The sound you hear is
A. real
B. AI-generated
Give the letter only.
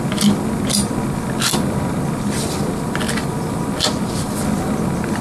A